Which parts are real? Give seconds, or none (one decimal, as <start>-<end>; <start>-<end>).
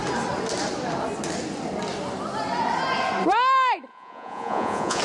0.0-3.9